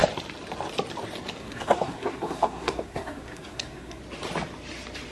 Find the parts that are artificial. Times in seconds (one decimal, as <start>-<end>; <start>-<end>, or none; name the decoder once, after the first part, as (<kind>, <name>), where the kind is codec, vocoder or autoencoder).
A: 1.4-4.0 (codec, SNAC)